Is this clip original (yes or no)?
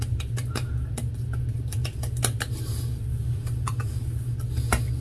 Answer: yes